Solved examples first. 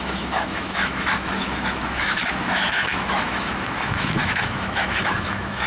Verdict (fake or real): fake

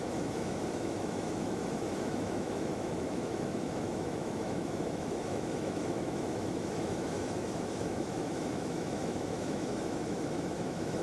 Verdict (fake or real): fake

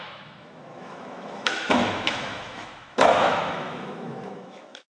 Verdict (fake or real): fake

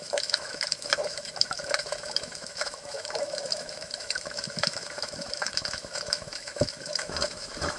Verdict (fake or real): fake